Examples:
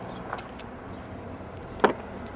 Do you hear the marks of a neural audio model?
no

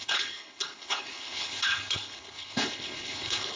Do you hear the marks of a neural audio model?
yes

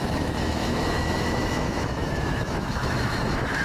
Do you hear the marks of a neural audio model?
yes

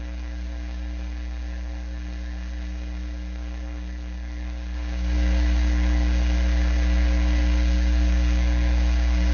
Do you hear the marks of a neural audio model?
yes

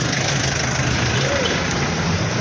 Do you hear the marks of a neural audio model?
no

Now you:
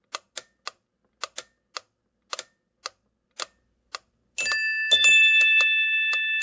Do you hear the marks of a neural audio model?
no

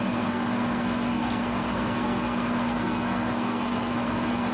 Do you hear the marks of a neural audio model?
yes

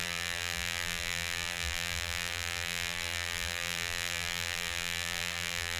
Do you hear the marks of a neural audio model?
yes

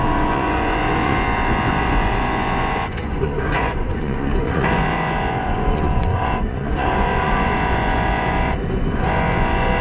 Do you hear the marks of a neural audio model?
yes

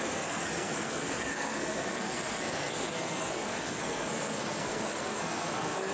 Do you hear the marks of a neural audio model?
yes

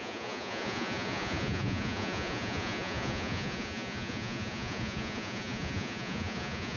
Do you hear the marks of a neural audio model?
yes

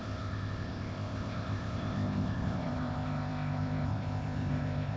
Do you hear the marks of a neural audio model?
yes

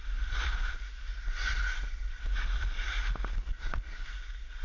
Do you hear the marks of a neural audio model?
no